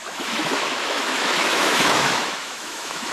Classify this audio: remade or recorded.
remade